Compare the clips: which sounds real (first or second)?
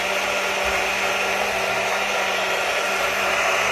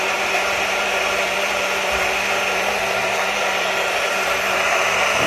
first